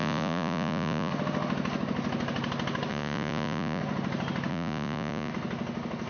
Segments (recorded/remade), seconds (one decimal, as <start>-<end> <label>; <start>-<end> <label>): 0.0-1.1 remade; 1.1-2.9 recorded; 2.9-3.8 remade; 3.8-4.5 recorded; 4.5-5.3 remade; 5.3-6.1 recorded